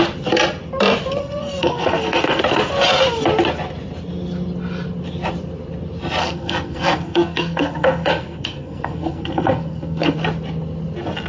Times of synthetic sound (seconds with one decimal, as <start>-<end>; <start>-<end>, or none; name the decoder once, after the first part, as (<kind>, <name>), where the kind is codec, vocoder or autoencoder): 1.2-2.4 (codec, SNAC); 6.2-10.2